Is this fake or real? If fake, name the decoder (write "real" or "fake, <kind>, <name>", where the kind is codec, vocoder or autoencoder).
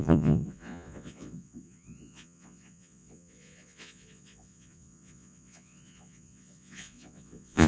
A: fake, vocoder, Vocos